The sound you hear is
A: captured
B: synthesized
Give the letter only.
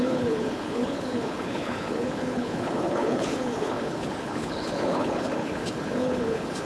B